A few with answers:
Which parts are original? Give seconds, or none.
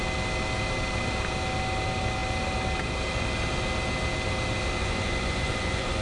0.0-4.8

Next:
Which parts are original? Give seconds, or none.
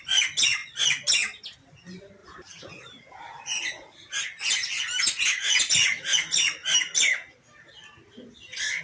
0.0-2.2; 4.2-8.8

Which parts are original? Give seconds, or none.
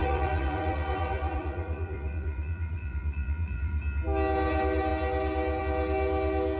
3.8-6.6